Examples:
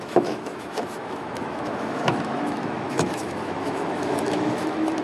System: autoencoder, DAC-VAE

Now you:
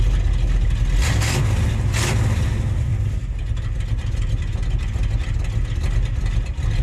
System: none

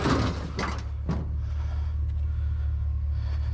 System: none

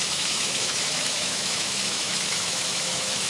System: autoencoder, DAC-VAE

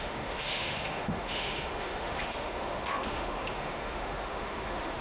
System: autoencoder, DAC-VAE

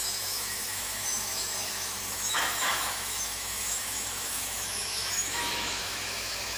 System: autoencoder, DAC-VAE